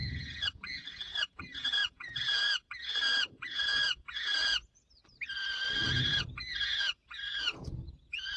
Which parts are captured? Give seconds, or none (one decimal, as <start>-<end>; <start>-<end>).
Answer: 5.0-5.9